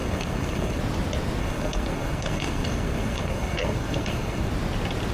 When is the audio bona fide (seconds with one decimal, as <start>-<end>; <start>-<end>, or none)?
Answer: 0.8-1.4; 4.5-5.1